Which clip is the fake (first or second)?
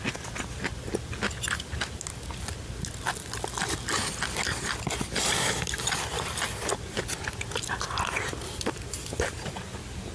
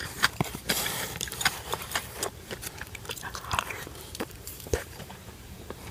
second